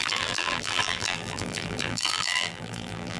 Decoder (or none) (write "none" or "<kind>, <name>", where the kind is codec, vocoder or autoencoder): vocoder, BigVGAN v2